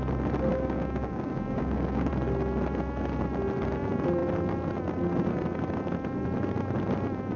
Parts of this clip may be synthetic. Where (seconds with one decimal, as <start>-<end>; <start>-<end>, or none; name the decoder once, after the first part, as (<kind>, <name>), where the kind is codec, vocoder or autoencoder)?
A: 0.5-2.1 (codec, DAC)